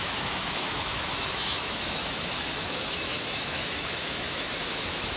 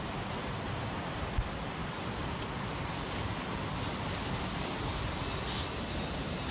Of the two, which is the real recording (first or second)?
second